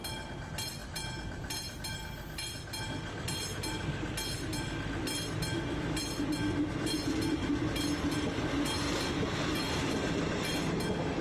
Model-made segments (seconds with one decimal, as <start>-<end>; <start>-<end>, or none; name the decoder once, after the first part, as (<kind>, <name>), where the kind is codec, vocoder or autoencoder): none